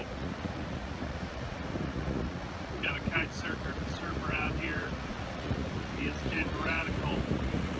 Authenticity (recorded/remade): remade